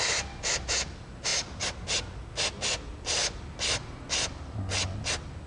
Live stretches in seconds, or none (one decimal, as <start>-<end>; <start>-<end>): 0.0-5.5